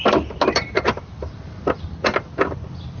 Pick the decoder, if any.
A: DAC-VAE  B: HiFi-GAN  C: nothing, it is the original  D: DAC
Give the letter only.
C